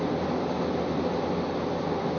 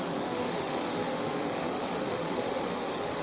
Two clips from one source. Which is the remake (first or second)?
second